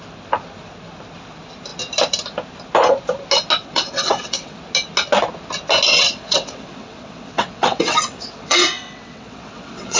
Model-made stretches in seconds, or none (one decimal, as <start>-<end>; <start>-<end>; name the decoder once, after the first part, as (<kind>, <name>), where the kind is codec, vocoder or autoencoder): 3.6-4.6 (vocoder, WaveNeXt); 5.9-10.0